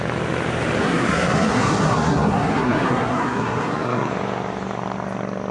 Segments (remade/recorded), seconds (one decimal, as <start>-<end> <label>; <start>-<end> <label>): 0.0-0.8 recorded; 0.8-4.1 remade; 4.1-5.5 recorded